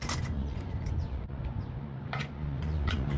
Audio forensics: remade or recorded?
remade